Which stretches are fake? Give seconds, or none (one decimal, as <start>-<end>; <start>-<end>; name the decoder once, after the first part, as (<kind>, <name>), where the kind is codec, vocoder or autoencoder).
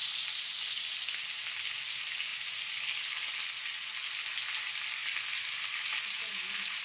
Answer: none